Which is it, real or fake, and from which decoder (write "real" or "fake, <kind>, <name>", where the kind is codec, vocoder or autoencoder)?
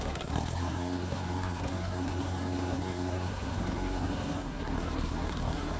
fake, codec, SNAC